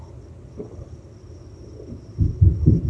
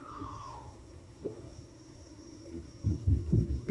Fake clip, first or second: second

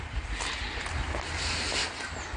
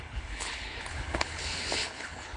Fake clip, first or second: second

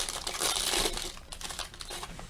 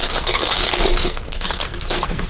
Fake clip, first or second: second